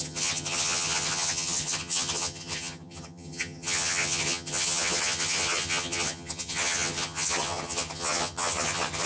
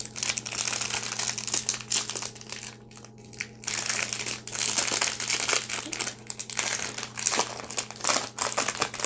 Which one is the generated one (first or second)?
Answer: first